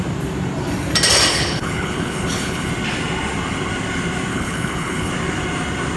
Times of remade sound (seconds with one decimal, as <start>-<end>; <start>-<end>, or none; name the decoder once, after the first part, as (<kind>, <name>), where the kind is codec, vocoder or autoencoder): 1.3-2.7 (codec, HILCodec); 4.3-5.1